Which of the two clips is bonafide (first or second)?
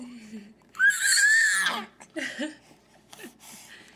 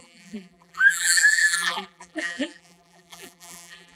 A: first